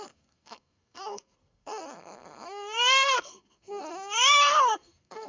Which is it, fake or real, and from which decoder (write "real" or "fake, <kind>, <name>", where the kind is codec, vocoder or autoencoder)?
fake, codec, SNAC